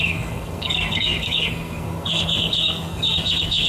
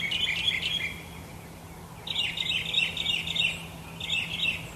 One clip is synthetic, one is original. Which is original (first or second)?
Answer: second